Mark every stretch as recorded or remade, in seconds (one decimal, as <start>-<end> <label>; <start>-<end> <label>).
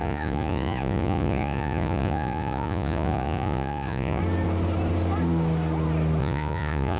0.0-4.2 remade; 4.2-6.2 recorded; 6.2-7.0 remade